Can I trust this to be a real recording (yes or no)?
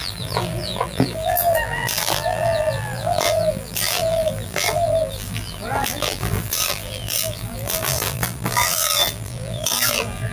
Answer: no